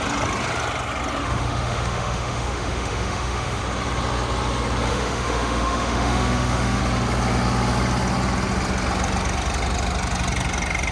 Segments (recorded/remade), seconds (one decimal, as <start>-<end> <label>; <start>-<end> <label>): 0.0-1.2 recorded; 1.2-3.6 remade; 3.6-4.9 recorded; 4.9-6.8 remade; 6.8-10.9 recorded